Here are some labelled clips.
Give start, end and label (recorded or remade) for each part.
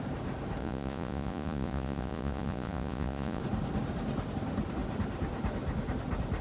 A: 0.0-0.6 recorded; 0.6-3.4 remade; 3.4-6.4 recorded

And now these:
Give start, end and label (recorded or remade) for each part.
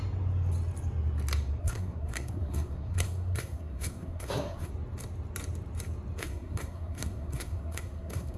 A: 0.0-1.6 recorded; 1.6-4.7 remade; 4.7-6.2 recorded; 6.2-8.4 remade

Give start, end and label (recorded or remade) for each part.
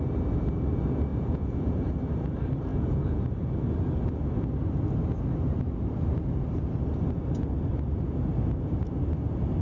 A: 0.0-1.1 recorded; 1.1-1.7 remade; 1.7-2.7 recorded; 2.7-3.2 remade; 3.2-9.6 recorded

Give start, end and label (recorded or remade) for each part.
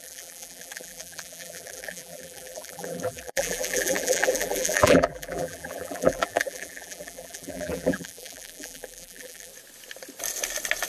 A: 0.0-9.5 remade; 9.5-10.9 recorded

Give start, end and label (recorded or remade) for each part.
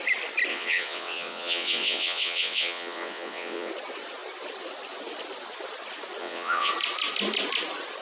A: 0.0-0.5 recorded; 0.5-3.7 remade; 3.7-6.2 recorded; 6.2-6.7 remade; 6.7-8.0 recorded